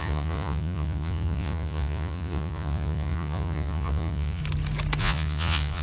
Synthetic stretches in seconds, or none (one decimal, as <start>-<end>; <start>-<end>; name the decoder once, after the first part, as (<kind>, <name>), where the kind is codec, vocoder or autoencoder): 0.0-4.4 (vocoder, Vocos); 5.0-5.8